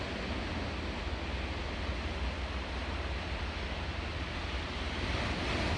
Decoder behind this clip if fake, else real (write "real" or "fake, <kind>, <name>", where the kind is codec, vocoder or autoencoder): real